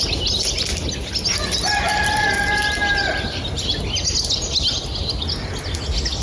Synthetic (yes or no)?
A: no